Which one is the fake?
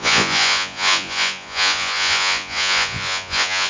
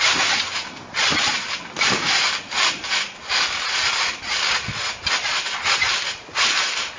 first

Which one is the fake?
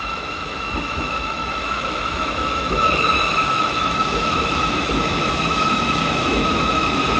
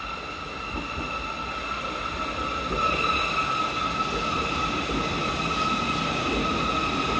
first